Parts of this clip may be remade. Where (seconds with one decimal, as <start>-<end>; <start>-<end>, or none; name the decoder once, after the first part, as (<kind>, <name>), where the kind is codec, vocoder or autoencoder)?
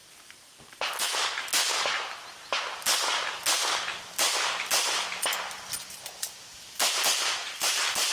0.0-1.0 (vocoder, BigVGAN v2); 7.4-8.1